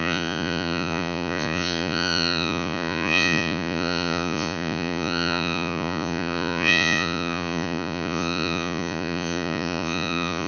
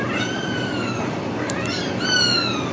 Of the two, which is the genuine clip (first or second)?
second